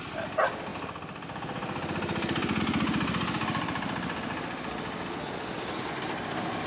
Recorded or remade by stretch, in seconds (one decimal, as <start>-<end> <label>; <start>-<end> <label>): 0.0-6.7 recorded

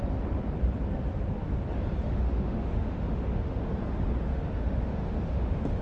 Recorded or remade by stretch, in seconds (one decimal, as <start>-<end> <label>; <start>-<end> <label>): 0.0-2.0 recorded; 2.0-3.7 remade; 3.7-4.3 recorded; 4.3-5.8 remade

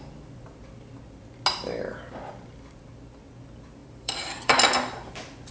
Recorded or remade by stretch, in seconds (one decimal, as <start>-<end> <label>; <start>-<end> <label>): 0.0-3.8 recorded; 3.8-5.1 remade; 5.1-5.5 recorded

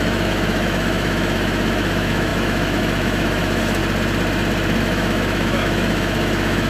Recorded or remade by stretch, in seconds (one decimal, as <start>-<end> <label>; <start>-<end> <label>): 0.0-3.8 remade; 3.8-4.8 recorded; 4.8-6.7 remade

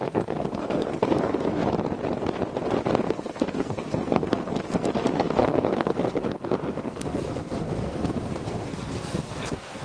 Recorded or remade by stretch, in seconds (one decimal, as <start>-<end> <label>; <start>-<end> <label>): 0.0-1.6 remade; 1.6-3.0 recorded; 3.0-9.8 remade